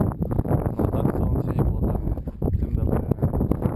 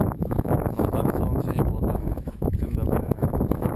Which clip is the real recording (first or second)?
first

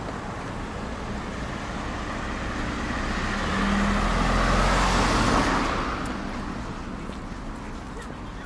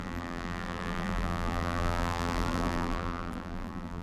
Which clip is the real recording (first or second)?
first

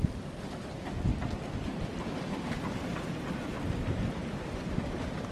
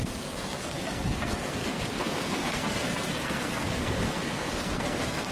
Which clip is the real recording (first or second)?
first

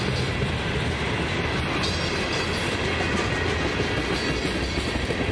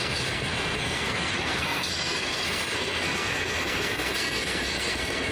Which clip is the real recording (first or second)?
first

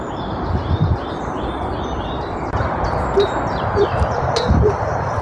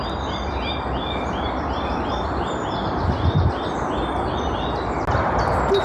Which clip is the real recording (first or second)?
second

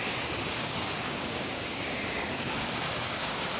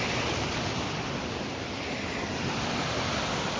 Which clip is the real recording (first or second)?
second